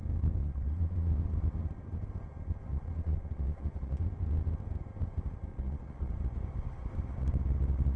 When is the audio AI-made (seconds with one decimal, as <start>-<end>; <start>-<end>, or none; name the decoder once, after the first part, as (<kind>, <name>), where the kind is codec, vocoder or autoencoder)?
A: 0.4-1.1 (vocoder, Vocos); 2.7-4.0; 5.5-6.1